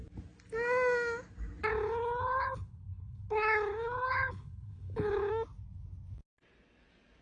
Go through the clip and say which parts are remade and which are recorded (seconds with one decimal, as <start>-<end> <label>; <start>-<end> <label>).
0.0-1.7 recorded; 1.7-5.3 remade; 5.3-7.2 recorded